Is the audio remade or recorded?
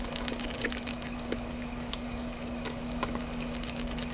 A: remade